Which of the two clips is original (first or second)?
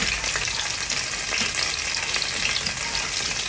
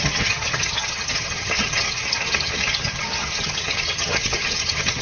first